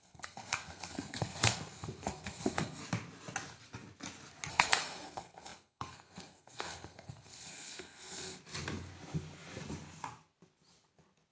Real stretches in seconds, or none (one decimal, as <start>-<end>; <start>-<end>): 2.8-4.5; 8.4-11.3